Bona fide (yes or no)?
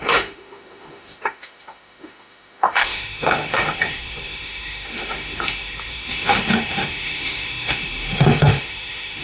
no